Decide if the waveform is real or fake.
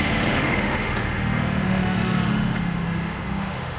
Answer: fake